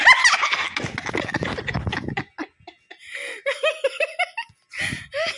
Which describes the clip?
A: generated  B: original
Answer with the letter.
B